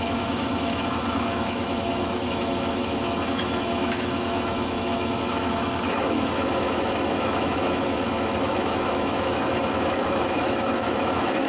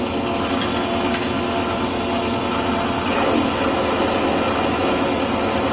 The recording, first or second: second